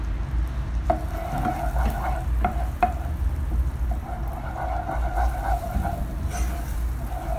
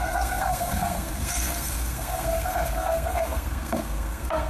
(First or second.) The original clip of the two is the first